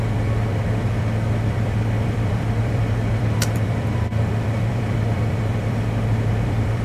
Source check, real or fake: fake